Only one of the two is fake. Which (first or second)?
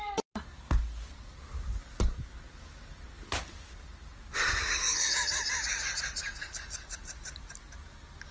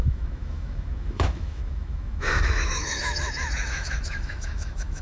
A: second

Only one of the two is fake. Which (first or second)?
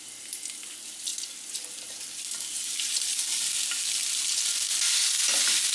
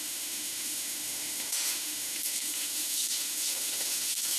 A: second